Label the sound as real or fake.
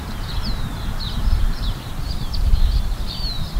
fake